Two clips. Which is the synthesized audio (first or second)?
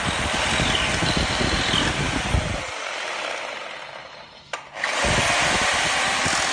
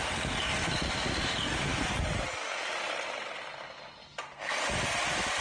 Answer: first